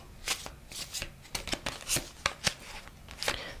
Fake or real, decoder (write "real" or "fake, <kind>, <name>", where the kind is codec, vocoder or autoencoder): real